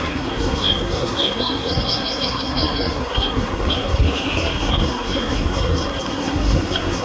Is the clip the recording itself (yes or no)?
no